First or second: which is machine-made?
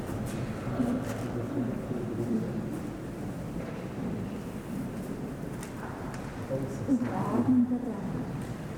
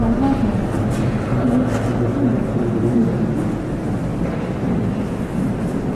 first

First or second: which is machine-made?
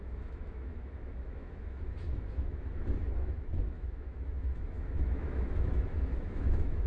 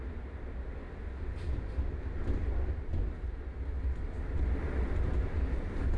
first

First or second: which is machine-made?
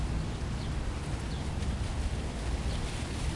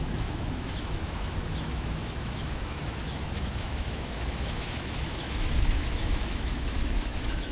second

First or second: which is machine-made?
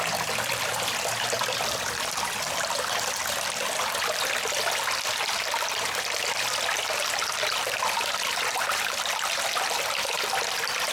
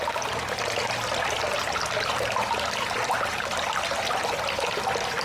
first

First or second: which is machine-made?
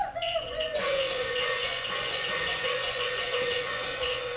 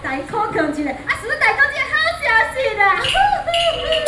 first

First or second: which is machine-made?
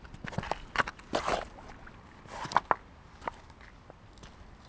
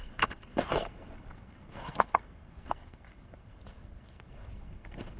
second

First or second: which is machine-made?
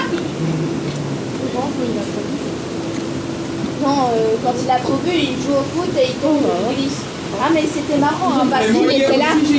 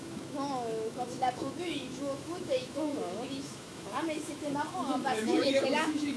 second